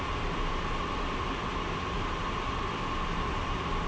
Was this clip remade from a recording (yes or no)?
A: no